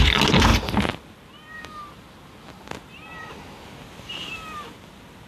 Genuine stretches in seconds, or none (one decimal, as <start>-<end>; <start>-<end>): 0.0-5.3